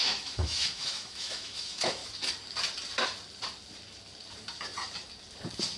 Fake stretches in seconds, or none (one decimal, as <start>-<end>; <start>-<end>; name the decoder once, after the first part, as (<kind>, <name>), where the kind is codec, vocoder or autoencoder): 0.0-2.0 (autoencoder, DAC-VAE)